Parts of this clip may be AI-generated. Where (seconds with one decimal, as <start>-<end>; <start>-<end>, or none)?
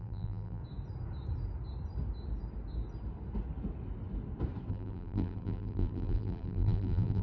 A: 0.0-0.6; 4.7-7.2